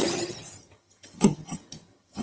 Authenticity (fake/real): fake